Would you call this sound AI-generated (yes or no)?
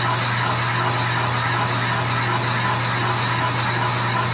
no